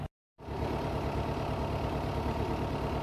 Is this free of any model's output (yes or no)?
yes